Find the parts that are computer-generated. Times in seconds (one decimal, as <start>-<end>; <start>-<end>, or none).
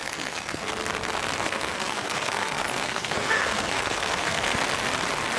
0.0-0.7; 1.4-4.6